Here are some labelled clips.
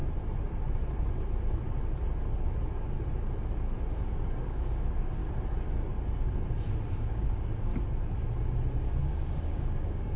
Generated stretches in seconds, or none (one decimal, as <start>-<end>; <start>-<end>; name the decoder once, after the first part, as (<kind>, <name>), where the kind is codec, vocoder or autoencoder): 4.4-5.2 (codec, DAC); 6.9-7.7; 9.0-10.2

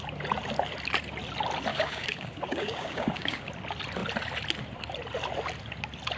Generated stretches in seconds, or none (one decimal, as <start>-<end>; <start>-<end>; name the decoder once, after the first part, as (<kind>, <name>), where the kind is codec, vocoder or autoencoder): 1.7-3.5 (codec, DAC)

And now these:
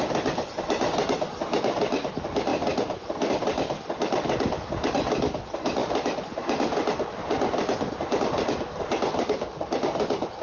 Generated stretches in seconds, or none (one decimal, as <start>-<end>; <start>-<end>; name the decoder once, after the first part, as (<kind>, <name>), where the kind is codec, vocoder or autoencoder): none